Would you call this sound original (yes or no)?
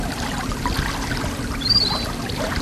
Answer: yes